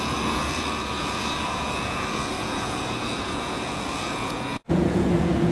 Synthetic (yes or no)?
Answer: yes